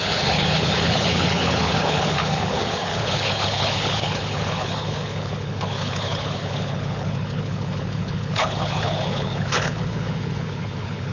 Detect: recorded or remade remade